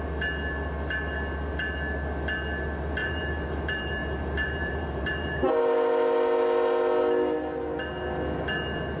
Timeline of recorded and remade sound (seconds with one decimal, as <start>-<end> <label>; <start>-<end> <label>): 0.0-3.0 recorded; 3.0-5.6 remade; 5.6-9.0 recorded